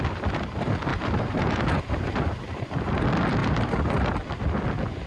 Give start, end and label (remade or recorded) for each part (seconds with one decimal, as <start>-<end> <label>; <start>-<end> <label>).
0.0-0.9 recorded; 0.9-1.8 remade; 1.8-3.4 recorded; 3.4-4.2 remade; 4.2-5.1 recorded